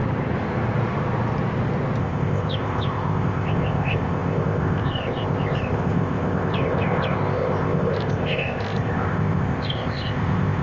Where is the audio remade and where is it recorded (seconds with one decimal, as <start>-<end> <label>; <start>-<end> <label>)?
0.0-2.0 recorded; 2.0-10.6 remade